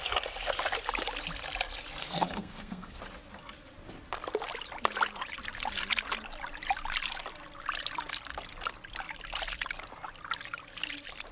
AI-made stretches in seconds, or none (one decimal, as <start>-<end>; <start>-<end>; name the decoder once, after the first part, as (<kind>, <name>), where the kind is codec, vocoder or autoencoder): 2.0-3.0 (codec, SNAC)